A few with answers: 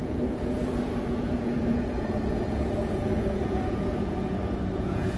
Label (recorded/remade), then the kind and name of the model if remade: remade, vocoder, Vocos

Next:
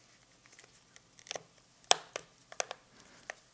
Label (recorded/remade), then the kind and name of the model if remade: recorded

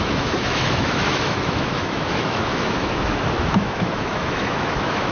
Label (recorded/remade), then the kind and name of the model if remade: remade, autoencoder, DAC-VAE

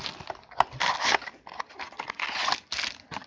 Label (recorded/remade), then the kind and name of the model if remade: recorded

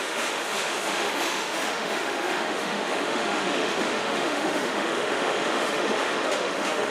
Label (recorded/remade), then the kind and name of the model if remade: remade, autoencoder, DAC-VAE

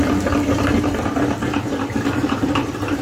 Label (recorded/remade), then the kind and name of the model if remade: remade, vocoder, BigVGAN v2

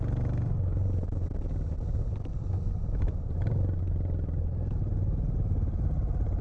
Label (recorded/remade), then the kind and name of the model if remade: recorded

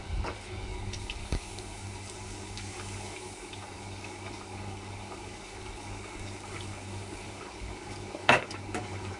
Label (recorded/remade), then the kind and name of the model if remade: remade, codec, DAC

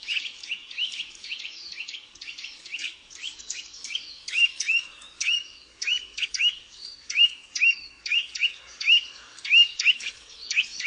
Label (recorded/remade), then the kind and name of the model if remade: remade, codec, DAC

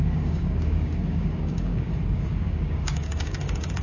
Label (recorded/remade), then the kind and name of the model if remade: remade, codec, DAC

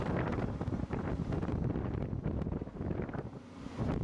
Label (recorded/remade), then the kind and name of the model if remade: remade, vocoder, BigVGAN v2